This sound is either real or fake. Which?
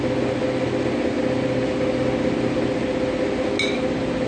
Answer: real